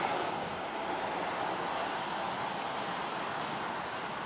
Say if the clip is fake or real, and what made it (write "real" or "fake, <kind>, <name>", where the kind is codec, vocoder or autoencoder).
real